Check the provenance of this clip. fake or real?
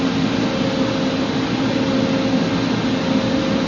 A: real